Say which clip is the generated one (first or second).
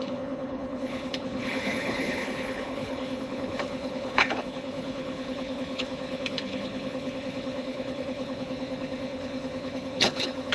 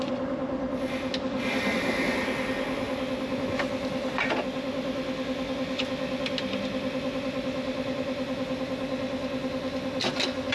first